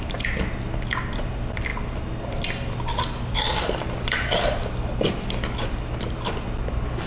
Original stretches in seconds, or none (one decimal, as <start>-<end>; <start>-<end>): 0.0-7.1